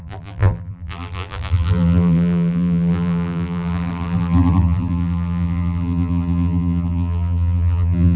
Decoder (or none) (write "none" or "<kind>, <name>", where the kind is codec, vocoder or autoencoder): vocoder, BigVGAN v2